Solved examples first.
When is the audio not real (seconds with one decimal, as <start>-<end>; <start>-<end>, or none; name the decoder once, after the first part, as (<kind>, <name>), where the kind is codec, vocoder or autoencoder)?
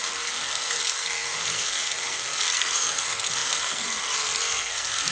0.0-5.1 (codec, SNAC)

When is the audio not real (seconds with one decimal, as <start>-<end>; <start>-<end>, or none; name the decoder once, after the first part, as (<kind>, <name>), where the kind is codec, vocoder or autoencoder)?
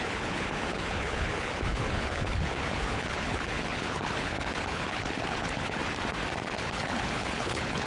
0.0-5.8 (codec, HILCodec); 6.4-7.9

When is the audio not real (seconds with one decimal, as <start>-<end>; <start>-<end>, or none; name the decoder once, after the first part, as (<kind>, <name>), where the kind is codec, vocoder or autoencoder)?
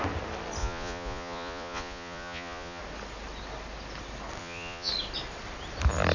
0.6-2.8 (vocoder, Vocos); 4.4-4.9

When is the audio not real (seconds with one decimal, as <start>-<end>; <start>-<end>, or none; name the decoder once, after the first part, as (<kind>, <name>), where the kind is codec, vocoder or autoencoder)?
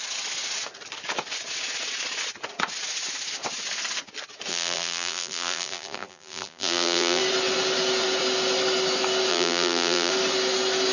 4.5-7.2 (vocoder, BigVGAN v2); 9.3-10.1